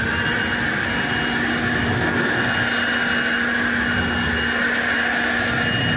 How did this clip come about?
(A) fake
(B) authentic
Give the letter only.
B